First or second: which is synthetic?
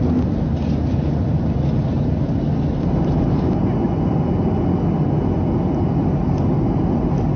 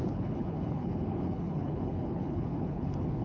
second